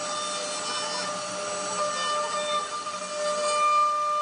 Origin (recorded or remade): recorded